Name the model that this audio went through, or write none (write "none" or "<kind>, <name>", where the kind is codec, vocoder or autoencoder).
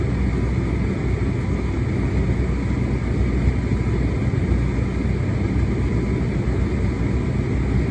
none